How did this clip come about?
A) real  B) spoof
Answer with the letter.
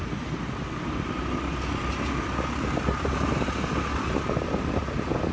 A